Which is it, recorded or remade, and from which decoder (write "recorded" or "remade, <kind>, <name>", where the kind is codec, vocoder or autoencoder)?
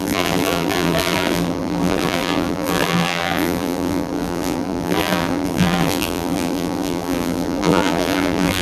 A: remade, vocoder, BigVGAN v2